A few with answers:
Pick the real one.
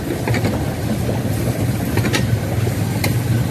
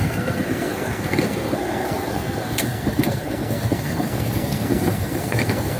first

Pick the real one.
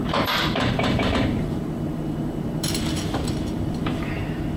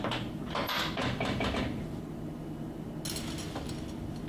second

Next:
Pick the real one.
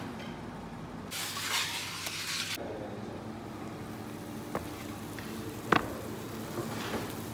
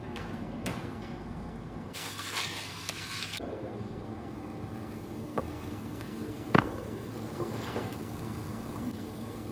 first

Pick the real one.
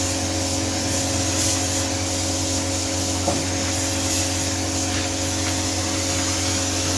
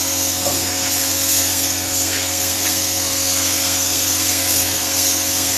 first